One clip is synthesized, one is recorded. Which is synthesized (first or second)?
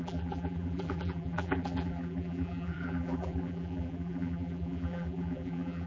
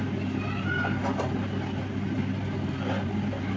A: first